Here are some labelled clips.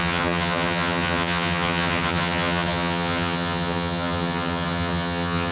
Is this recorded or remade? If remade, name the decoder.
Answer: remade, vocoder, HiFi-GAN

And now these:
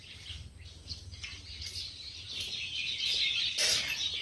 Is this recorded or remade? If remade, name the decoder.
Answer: recorded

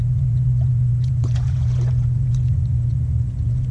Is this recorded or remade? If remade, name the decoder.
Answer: remade, vocoder, Vocos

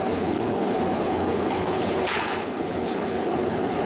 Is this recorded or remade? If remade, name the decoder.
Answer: remade, codec, HILCodec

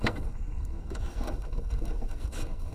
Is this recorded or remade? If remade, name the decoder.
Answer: remade, codec, SNAC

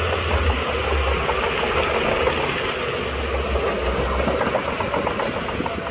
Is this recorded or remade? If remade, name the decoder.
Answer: recorded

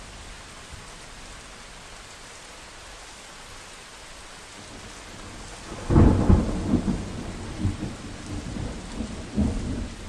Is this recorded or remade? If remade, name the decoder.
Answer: recorded